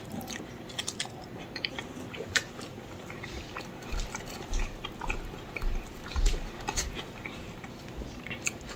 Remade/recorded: remade